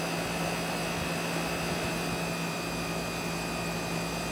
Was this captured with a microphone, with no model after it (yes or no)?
yes